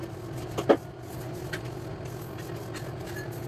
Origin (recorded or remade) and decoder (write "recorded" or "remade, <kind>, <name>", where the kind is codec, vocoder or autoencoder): recorded